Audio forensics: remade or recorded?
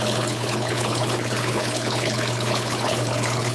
remade